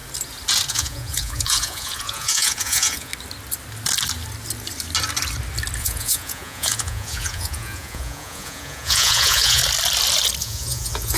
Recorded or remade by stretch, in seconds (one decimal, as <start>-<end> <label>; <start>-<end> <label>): 0.0-0.7 recorded; 0.7-3.1 remade; 3.1-5.8 recorded; 5.8-9.6 remade; 9.6-10.4 recorded; 10.4-11.2 remade